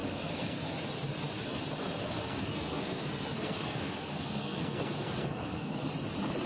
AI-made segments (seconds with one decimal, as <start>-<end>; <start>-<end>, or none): 0.0-0.7; 2.0-5.9